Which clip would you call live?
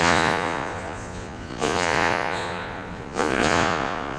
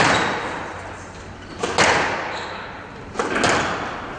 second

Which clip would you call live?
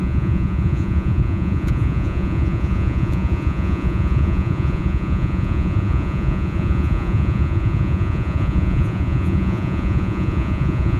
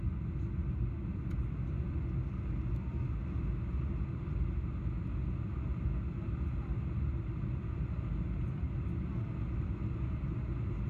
second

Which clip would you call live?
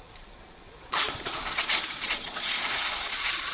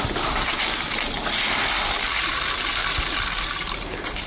second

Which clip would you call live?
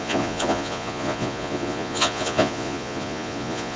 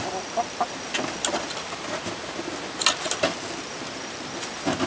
second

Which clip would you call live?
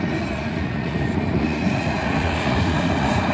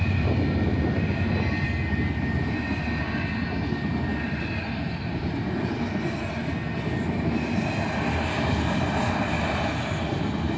second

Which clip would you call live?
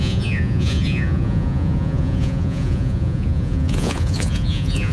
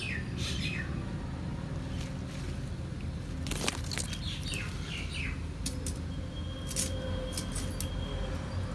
second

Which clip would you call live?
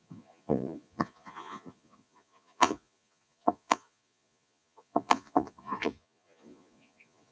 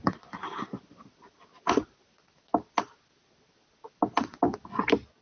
second